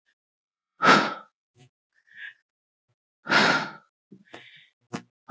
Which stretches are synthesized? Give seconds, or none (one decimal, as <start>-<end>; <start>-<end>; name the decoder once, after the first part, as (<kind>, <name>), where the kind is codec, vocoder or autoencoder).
0.0-3.0 (vocoder, Vocos)